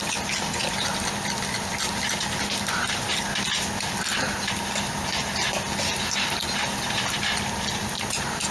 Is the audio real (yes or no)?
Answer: yes